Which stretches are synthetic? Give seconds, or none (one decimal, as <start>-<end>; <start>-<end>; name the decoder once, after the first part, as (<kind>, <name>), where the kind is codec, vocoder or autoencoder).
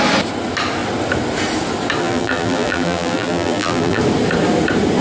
2.0-4.0 (vocoder, BigVGAN v2)